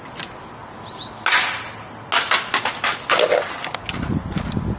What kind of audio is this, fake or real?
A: real